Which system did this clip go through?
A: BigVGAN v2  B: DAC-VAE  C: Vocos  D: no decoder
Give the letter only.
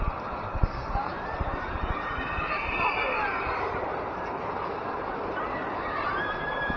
A